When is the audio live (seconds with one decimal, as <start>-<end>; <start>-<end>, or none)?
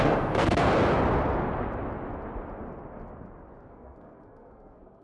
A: 0.7-3.7